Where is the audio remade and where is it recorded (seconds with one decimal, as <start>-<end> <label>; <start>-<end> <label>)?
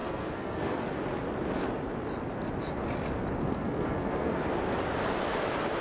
0.0-0.9 remade; 0.9-3.4 recorded; 3.4-4.5 remade; 4.5-5.8 recorded